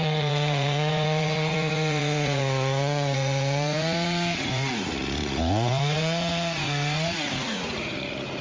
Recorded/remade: remade